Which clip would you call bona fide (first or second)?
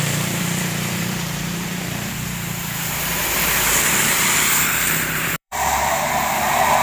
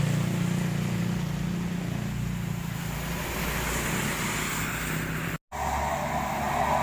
second